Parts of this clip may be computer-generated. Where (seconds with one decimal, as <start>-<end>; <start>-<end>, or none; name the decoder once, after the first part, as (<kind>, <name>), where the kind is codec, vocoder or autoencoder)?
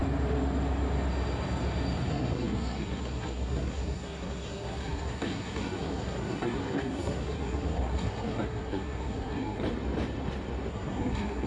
2.1-9.6 (codec, SNAC); 10.7-11.5